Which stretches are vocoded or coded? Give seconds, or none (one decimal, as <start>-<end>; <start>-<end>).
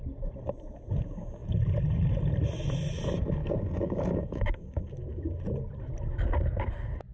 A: 3.4-4.8